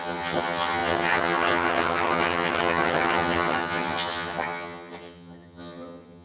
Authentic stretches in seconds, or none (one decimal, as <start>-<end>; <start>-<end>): none